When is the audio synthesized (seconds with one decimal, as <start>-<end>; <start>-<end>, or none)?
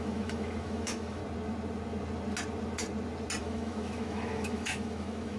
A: 0.0-1.2; 3.4-5.4